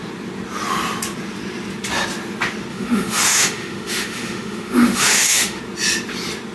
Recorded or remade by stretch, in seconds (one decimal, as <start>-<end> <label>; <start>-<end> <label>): 0.0-2.7 recorded; 2.7-5.6 remade; 5.6-6.5 recorded